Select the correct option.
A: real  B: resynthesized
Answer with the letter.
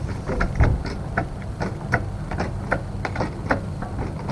A